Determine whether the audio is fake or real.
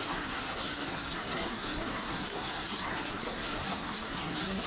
fake